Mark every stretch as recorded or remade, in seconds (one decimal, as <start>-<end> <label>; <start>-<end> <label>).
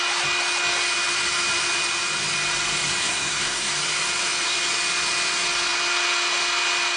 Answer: 0.0-3.0 recorded; 3.0-3.7 remade; 3.7-7.0 recorded